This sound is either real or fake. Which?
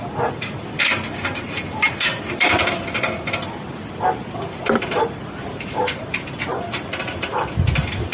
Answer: real